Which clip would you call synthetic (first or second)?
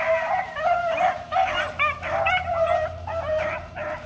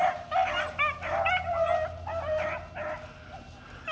first